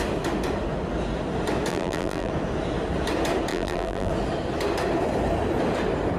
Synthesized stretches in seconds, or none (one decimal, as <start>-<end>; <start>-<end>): 1.7-2.3; 3.5-4.1